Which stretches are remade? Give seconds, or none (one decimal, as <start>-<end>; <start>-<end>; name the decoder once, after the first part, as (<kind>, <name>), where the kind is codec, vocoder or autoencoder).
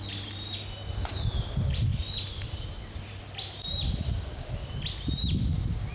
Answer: none